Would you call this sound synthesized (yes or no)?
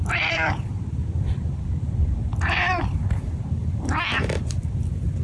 yes